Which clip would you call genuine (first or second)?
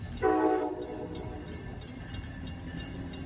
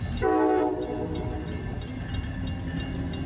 second